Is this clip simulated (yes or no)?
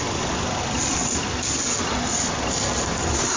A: no